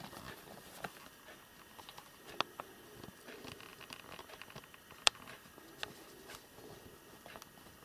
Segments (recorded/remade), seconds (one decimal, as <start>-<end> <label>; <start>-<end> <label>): 0.0-7.8 recorded